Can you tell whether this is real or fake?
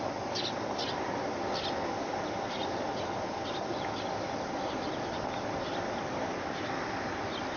real